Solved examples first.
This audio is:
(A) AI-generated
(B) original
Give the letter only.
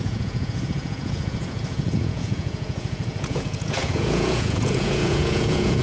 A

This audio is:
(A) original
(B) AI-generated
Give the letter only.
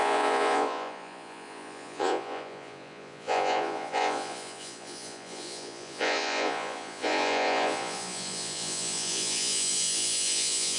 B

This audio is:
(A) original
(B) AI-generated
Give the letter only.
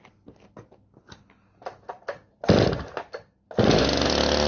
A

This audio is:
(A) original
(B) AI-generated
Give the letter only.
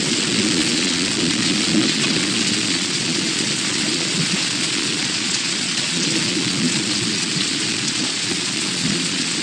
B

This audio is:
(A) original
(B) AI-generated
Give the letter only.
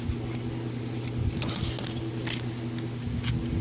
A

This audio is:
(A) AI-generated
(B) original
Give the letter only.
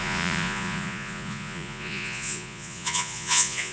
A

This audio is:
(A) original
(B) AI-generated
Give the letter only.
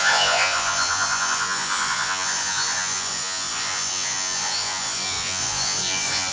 B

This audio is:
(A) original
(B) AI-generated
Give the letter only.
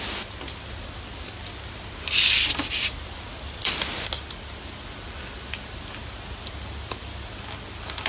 A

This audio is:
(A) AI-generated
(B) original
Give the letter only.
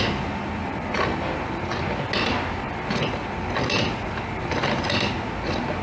B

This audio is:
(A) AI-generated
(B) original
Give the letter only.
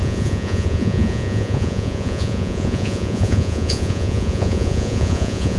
A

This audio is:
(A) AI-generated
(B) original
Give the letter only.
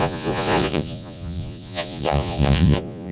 A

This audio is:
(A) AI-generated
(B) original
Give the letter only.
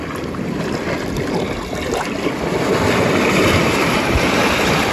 B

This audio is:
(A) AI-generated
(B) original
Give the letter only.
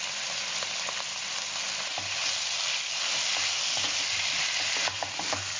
B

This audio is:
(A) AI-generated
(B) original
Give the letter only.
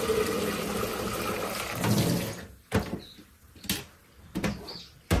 B